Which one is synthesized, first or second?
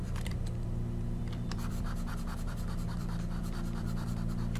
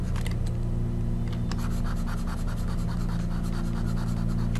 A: first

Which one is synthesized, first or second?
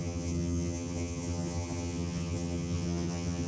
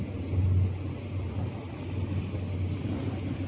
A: first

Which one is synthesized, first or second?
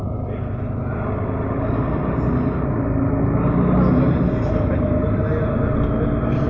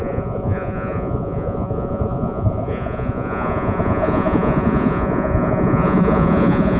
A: second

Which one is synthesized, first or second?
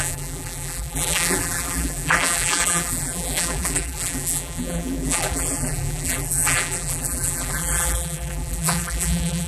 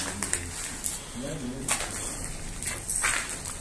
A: first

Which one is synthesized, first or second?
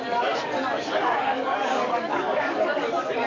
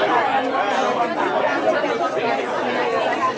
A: first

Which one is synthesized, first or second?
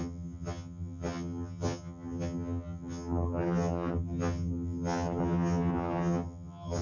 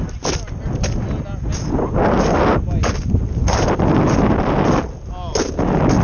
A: first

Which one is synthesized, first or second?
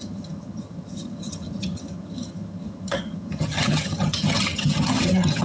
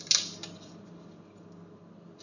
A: first